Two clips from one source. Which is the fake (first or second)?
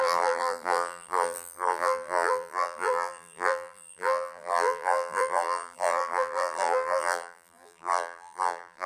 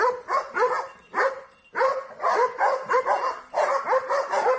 first